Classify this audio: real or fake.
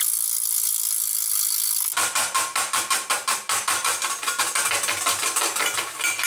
real